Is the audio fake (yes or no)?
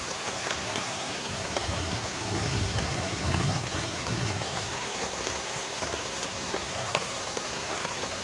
yes